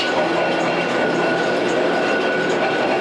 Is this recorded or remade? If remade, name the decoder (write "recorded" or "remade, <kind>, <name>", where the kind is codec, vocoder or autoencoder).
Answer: recorded